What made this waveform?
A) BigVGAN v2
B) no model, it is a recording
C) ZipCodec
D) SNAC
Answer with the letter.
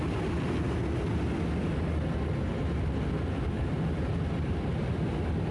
B